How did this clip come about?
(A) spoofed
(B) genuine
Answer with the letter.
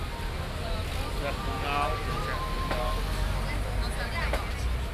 B